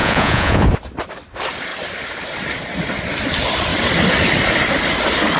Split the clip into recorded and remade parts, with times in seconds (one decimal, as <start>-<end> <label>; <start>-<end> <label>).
0.0-0.7 remade; 0.7-5.4 recorded